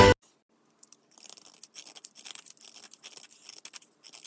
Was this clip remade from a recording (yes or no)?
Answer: no